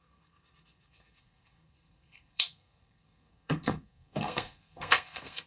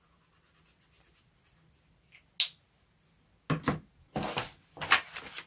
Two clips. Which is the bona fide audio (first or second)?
second